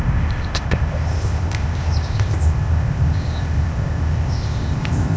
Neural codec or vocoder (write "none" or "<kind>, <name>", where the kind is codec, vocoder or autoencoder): codec, ZipCodec